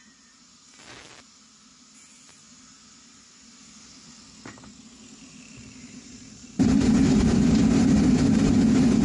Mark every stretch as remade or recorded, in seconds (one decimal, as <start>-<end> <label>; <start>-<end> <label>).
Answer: 0.0-5.8 recorded; 5.8-8.5 remade; 8.5-9.0 recorded